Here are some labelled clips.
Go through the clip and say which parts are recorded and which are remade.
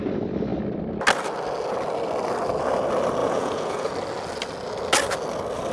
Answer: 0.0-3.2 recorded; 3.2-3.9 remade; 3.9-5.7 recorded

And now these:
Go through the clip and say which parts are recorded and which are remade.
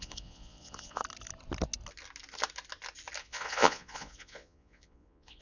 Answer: 0.0-1.0 remade; 1.0-3.2 recorded; 3.2-5.4 remade